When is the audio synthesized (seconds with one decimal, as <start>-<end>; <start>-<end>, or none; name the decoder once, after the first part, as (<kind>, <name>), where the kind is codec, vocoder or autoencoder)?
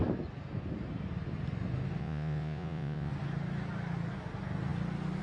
2.0-3.1 (vocoder, Vocos)